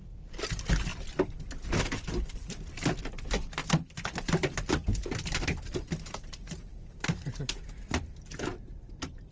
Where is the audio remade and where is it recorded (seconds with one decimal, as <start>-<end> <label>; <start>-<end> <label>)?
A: 0.0-0.9 remade; 0.9-2.1 recorded; 2.1-3.6 remade; 3.6-5.0 recorded; 5.0-9.3 remade